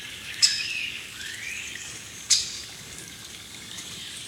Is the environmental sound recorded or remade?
remade